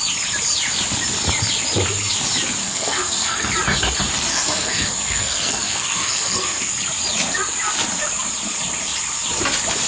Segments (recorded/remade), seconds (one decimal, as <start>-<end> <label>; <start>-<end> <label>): 0.0-2.6 recorded; 2.6-3.5 remade; 3.5-4.3 recorded; 4.3-6.7 remade; 6.7-9.9 recorded